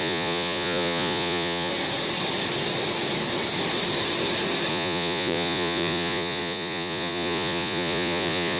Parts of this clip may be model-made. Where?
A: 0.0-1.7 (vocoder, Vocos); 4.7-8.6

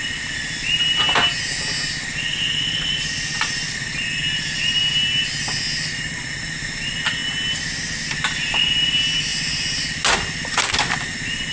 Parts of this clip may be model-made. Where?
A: none

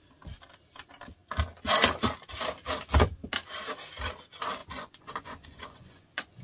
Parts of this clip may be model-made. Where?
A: 4.6-6.4 (vocoder, Vocos)

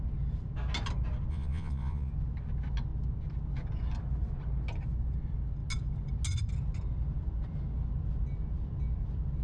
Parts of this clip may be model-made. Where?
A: 1.3-2.1 (vocoder, Vocos)

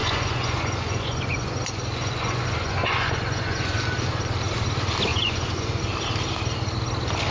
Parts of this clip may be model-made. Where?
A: 0.0-3.8 (vocoder, Vocos); 5.1-5.8

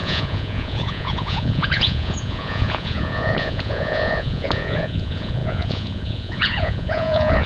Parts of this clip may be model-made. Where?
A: 0.0-7.5 (vocoder, Vocos)